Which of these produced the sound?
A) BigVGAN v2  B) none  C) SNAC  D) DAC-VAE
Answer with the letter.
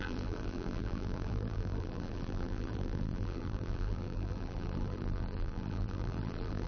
A